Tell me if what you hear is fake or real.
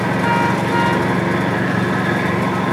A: real